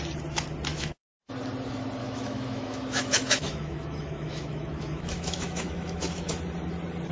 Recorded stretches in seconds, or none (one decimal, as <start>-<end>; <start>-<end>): 0.0-0.7; 1.3-2.0; 6.3-7.1